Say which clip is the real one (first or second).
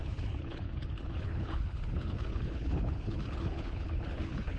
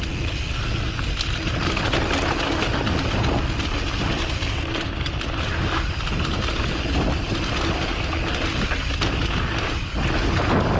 second